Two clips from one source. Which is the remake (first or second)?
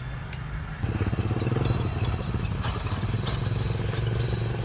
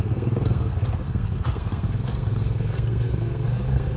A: second